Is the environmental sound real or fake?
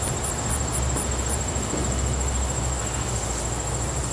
real